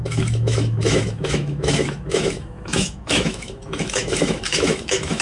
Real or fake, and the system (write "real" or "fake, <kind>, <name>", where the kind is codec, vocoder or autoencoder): fake, autoencoder, DAC-VAE